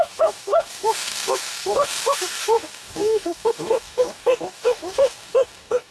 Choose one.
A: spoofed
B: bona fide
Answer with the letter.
A